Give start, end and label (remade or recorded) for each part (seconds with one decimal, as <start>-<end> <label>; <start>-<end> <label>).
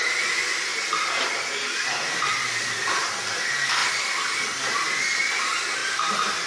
0.0-6.5 recorded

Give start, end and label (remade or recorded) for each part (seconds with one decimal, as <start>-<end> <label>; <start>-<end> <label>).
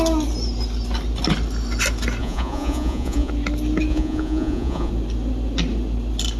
0.0-2.2 recorded; 2.2-3.3 remade; 3.3-3.9 recorded; 3.9-4.9 remade; 4.9-6.4 recorded